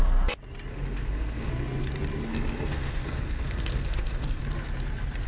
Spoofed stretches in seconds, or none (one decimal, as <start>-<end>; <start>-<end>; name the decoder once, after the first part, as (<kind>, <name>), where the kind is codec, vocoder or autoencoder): 0.7-1.5 (codec, SNAC); 2.3-4.4